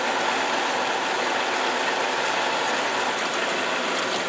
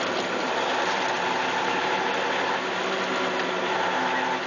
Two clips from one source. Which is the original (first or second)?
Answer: second